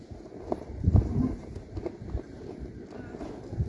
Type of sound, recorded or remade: recorded